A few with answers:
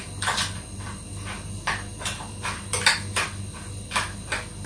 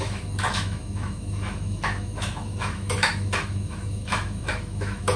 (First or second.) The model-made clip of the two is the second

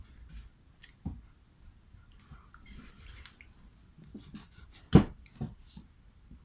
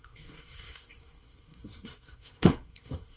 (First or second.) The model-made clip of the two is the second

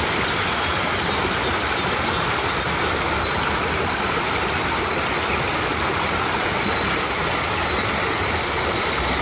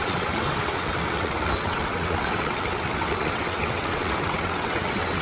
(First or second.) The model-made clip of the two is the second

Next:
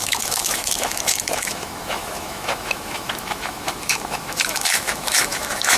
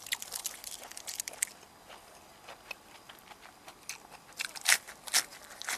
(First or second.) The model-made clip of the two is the first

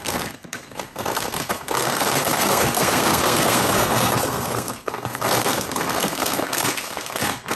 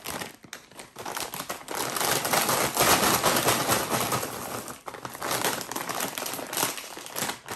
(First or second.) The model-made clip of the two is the first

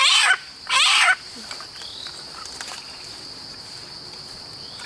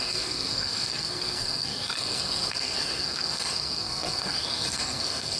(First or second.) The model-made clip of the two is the second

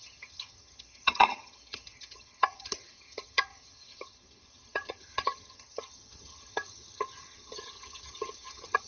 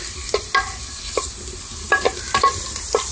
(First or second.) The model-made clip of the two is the first